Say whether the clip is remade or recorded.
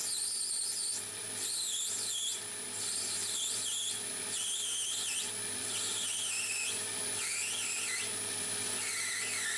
recorded